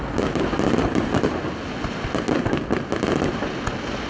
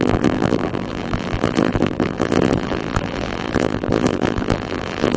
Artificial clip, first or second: second